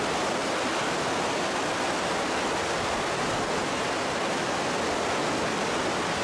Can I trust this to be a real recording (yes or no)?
yes